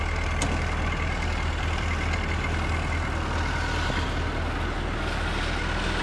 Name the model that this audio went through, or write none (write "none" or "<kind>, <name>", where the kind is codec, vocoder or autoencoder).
none